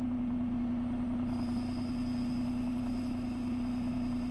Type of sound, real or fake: real